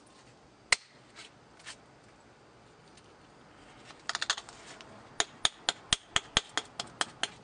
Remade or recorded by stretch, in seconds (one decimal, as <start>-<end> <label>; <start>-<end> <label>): 0.0-7.4 recorded